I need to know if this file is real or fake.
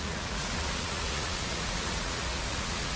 fake